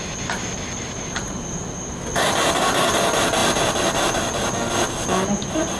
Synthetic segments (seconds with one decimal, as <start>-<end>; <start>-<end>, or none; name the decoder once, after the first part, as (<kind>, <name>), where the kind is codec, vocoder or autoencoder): none